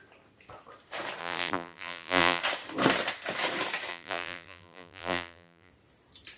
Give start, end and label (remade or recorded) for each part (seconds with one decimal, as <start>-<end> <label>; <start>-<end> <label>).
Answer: 0.0-1.2 recorded; 1.2-2.4 remade; 2.4-3.9 recorded; 3.9-5.7 remade; 5.7-6.4 recorded